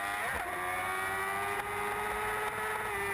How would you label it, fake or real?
real